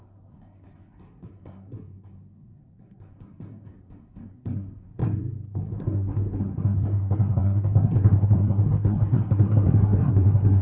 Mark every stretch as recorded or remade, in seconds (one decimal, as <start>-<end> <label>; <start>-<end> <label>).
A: 0.0-10.6 remade